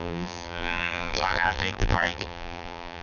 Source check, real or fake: fake